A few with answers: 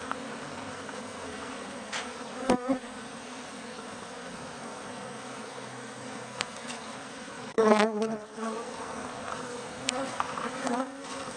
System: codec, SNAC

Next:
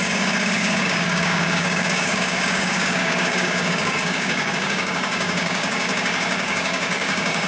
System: codec, DAC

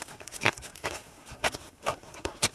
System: codec, SNAC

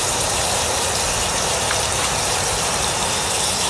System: vocoder, BigVGAN v2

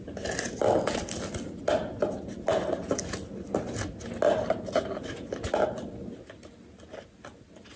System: none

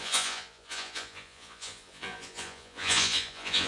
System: vocoder, Vocos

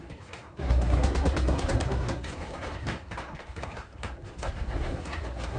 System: codec, SNAC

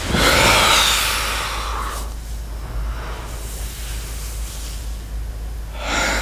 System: none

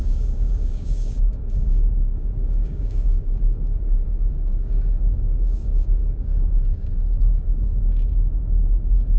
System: codec, DAC